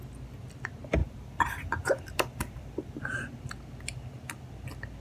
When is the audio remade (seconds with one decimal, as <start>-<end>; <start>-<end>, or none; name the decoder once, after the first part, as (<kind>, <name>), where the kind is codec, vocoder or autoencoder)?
1.0-3.0 (vocoder, BigVGAN v2)